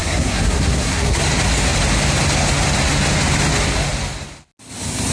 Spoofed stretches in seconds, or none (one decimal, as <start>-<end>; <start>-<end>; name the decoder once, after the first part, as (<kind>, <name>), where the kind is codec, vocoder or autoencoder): 0.0-1.2 (codec, SNAC)